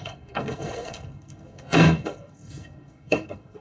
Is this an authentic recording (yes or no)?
no